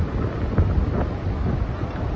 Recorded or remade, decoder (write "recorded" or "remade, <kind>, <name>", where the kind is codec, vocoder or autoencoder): recorded